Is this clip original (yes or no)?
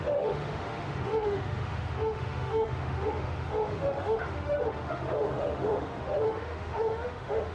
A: no